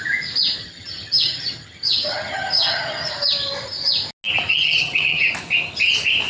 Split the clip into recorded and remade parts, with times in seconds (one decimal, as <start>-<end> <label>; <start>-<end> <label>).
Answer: 0.0-0.6 recorded; 0.6-3.1 remade; 3.1-4.5 recorded; 4.5-5.3 remade; 5.3-6.3 recorded